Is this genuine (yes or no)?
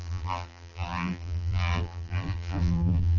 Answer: no